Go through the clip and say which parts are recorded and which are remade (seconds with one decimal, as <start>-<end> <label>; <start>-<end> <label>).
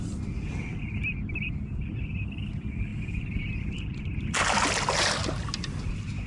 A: 0.0-2.9 recorded; 2.9-4.4 remade; 4.4-6.3 recorded